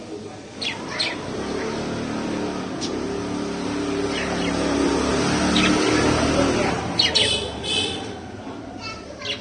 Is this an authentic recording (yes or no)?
yes